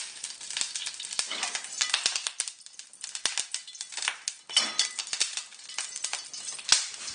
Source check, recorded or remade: recorded